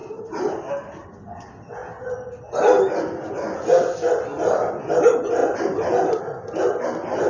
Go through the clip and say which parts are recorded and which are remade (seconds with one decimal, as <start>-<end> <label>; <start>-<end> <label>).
0.0-7.3 recorded